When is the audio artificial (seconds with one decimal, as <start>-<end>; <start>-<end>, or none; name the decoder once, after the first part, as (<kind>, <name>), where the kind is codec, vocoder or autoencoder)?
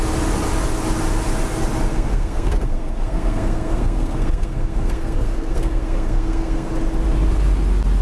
1.9-6.7 (codec, SNAC)